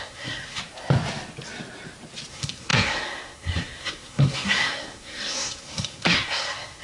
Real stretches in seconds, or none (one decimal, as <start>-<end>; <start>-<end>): 0.6-2.3